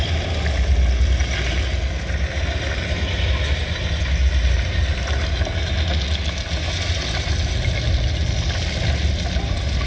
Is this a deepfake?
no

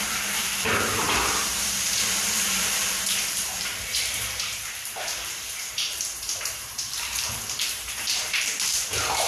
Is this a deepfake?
yes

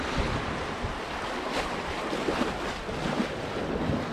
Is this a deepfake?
no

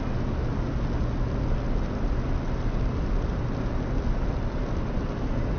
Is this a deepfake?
no